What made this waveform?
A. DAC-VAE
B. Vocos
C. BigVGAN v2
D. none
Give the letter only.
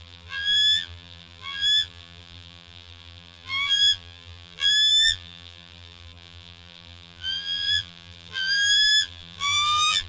C